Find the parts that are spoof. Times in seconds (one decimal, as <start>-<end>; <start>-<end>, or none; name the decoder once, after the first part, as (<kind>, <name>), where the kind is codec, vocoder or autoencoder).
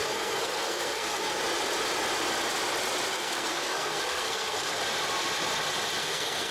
0.0-1.4 (codec, SNAC); 3.1-4.8; 6.0-6.5